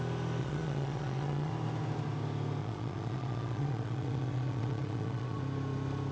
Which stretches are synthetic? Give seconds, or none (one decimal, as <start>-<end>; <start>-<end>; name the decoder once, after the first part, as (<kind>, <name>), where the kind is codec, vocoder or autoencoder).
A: 0.4-1.5 (vocoder, Vocos); 2.6-5.4